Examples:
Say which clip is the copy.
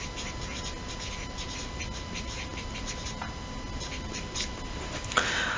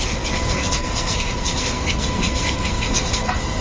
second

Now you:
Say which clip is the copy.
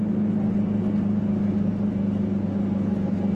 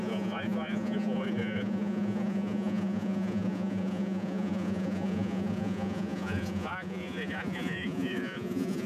second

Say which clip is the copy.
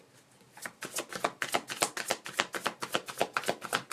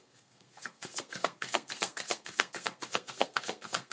second